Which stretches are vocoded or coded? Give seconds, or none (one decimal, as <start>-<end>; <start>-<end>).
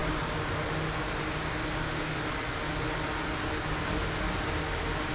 none